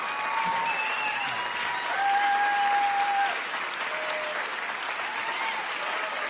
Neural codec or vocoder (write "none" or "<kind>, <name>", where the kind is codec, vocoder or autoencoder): none